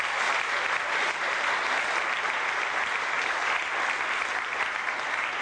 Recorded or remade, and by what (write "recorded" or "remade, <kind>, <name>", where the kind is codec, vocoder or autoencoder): recorded